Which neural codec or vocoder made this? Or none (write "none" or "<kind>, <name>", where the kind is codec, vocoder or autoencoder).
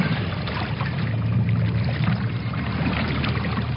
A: vocoder, BigVGAN v2